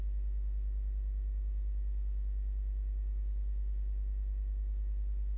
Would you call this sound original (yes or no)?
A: yes